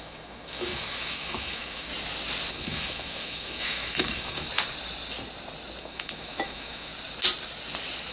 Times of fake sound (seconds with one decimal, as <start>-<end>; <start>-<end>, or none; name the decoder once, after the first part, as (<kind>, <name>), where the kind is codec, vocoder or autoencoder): 0.0-1.9 (autoencoder, DAC-VAE); 2.5-4.5; 5.8-6.9